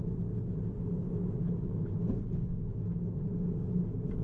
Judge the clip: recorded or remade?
recorded